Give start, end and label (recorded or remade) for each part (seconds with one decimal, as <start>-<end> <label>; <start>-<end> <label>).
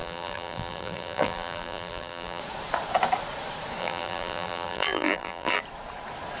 0.0-2.4 remade; 2.4-3.8 recorded; 3.8-5.6 remade; 5.6-6.4 recorded